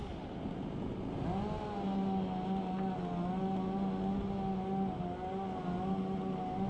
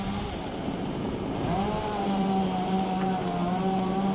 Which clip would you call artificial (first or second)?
second